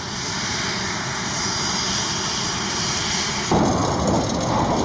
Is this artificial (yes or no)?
no